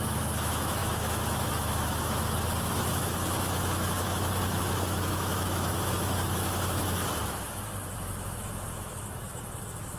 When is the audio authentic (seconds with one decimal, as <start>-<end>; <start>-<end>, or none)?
none

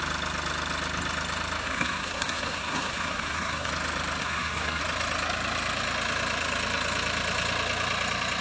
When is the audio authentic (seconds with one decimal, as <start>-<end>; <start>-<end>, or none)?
0.0-1.6; 3.7-4.2; 4.8-8.4

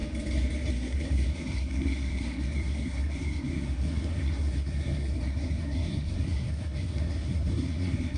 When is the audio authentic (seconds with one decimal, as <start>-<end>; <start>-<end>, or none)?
0.0-0.7